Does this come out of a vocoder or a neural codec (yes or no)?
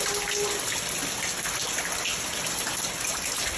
no